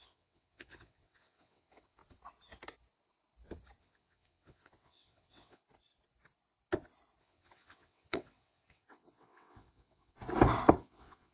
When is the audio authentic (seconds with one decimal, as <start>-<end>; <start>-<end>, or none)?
2.0-3.8; 5.6-7.2; 10.2-10.8